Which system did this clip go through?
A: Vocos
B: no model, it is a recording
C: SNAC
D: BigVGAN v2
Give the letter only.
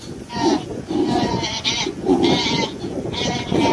A